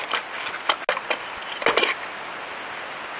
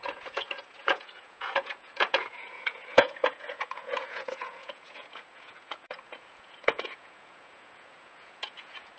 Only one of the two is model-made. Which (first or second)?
second